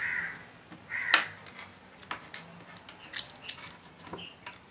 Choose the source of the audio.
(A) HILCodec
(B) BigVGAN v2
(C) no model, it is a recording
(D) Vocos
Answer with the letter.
C